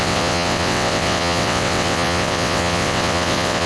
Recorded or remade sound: remade